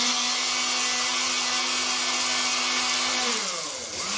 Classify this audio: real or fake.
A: real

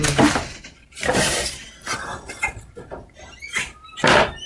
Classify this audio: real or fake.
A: real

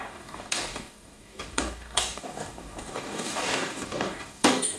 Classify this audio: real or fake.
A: fake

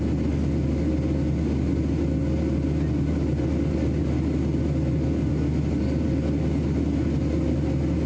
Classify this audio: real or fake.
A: real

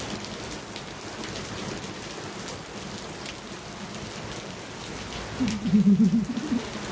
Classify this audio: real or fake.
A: real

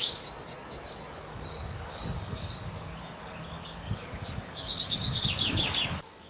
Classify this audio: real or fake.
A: fake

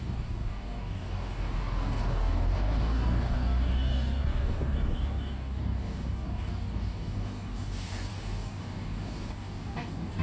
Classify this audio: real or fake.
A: fake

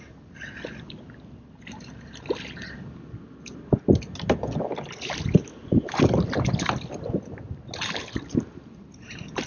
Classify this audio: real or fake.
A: real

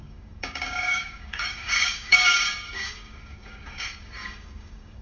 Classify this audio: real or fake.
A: fake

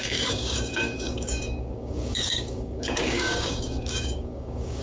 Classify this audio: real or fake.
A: fake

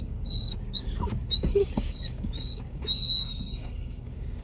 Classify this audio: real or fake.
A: fake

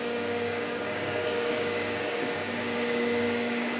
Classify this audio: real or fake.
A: fake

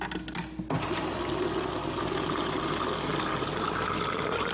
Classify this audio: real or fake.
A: real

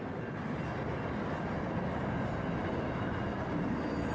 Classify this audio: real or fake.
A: real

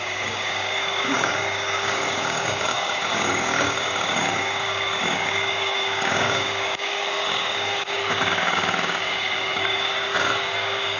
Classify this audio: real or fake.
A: fake